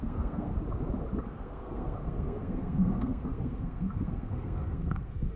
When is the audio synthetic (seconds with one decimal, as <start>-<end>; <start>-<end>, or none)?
0.0-0.5; 1.2-5.4